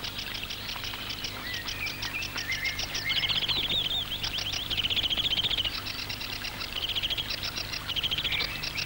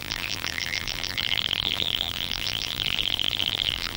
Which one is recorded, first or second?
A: first